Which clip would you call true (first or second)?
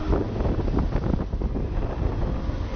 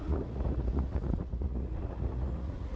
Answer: first